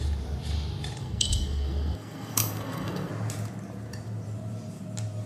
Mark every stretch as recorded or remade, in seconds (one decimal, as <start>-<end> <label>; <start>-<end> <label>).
0.0-1.0 recorded; 1.0-3.1 remade; 3.1-5.3 recorded